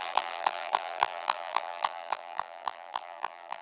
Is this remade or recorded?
remade